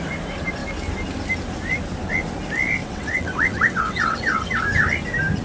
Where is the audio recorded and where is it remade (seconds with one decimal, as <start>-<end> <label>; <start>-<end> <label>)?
0.0-2.8 recorded; 2.8-4.6 remade; 4.6-5.4 recorded